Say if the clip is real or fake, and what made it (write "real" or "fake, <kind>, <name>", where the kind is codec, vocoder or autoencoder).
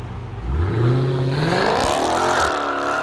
real